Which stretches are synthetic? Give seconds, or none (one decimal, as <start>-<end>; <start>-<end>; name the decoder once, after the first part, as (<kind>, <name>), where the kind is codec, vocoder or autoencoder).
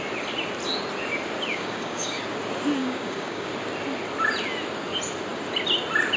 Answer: 1.5-2.2 (codec, DAC); 2.8-3.5